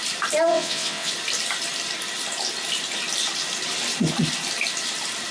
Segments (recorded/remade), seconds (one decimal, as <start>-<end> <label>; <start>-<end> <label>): 0.0-0.5 recorded; 0.5-1.1 remade; 1.1-5.3 recorded